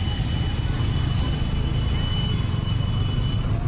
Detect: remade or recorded recorded